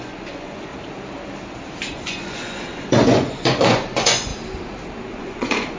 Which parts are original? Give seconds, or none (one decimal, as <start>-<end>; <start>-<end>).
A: 0.7-1.9; 4.3-5.2